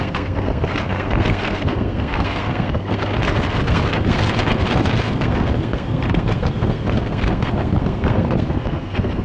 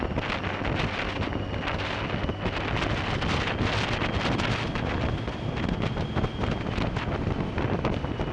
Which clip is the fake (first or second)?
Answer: first